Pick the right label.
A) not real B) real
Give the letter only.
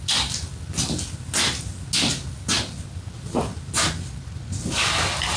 B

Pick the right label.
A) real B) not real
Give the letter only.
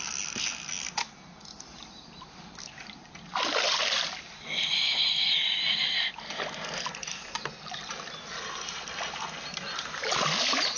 A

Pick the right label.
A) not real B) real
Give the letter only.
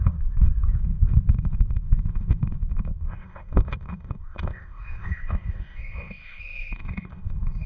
A